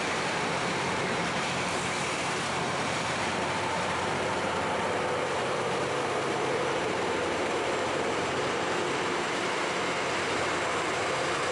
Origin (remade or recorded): remade